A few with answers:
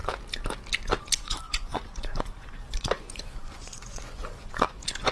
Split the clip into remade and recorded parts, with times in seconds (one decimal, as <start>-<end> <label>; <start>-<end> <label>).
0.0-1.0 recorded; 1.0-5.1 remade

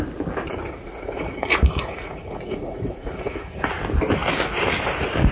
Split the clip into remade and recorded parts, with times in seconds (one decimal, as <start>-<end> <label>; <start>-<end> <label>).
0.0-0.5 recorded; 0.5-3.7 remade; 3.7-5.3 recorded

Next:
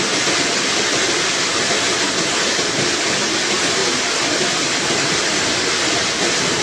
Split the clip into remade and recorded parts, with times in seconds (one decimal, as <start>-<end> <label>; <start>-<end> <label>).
0.0-6.6 recorded